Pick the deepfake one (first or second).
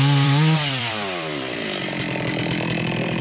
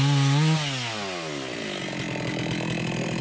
first